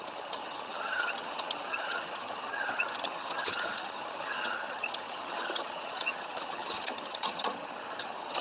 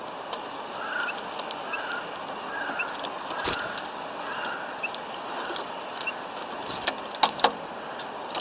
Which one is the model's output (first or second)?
first